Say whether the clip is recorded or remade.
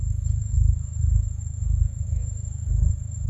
remade